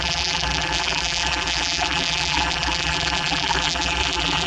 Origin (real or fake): fake